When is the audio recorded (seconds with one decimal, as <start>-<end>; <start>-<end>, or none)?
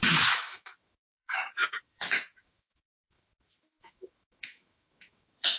none